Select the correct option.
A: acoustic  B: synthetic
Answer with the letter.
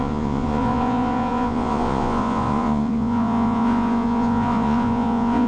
B